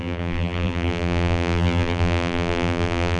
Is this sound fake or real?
fake